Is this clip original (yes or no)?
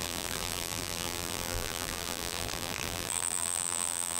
no